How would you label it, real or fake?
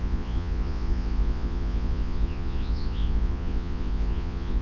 fake